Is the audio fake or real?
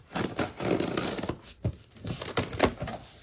fake